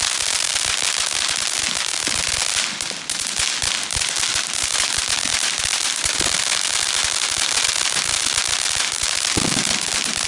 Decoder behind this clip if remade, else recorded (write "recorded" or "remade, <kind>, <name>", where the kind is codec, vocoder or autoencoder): recorded